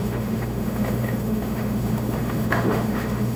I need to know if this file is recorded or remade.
remade